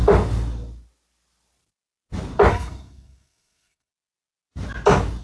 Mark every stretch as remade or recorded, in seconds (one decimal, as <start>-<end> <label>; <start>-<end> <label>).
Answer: 0.0-2.5 recorded; 2.5-3.9 remade; 3.9-5.2 recorded